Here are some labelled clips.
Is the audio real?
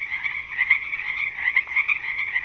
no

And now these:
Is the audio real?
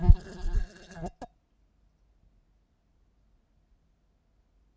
yes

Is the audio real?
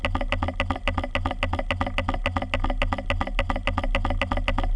yes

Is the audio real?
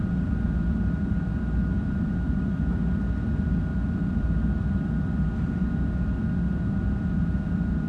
no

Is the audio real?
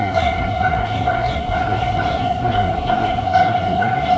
no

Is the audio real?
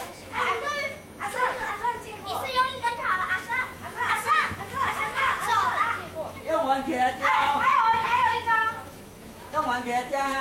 no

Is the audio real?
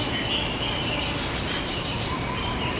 no